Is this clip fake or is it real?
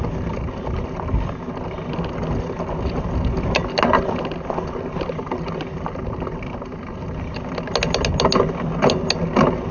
real